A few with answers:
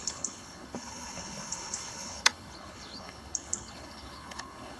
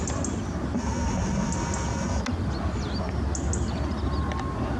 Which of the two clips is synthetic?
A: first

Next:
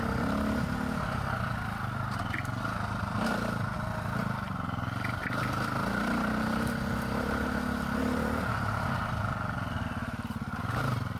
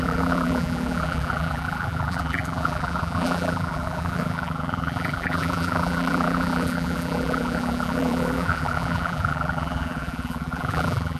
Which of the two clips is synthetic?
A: second